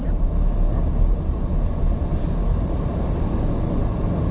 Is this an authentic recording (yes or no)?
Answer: yes